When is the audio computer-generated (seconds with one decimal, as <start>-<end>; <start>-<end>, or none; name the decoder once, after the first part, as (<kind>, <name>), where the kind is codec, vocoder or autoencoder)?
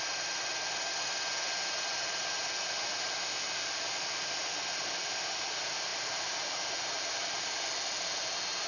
none